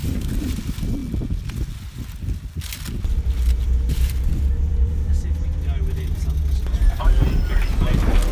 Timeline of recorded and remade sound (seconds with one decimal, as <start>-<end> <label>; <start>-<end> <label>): 0.0-0.6 remade; 0.6-3.6 recorded; 3.6-5.1 remade; 5.1-8.3 recorded